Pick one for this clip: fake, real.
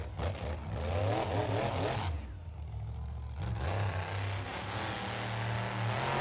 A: real